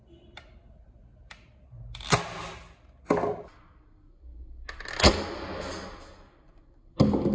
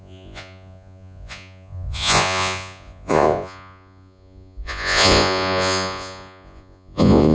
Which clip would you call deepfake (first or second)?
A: second